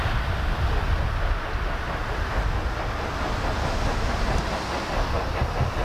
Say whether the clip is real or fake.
real